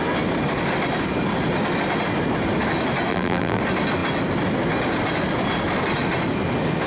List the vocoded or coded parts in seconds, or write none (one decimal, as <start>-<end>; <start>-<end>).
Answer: 3.1-3.6